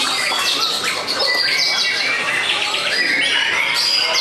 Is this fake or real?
real